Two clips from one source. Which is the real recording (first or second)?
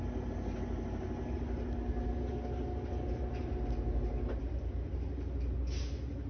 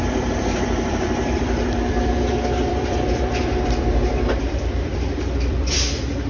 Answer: first